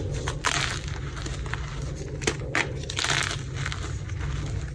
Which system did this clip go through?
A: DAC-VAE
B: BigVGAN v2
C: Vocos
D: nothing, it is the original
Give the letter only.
D